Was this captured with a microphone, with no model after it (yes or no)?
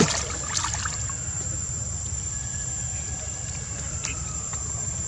yes